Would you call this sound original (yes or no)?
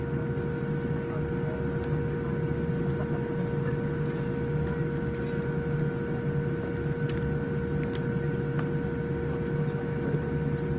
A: yes